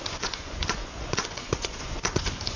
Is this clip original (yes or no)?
no